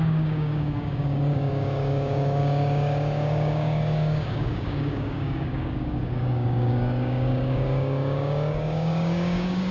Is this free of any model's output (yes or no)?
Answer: no